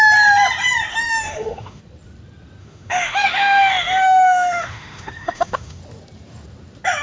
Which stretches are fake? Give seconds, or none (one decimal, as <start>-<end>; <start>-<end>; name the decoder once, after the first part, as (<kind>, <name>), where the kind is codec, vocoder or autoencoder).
0.9-1.8 (autoencoder, DAC-VAE); 2.6-5.8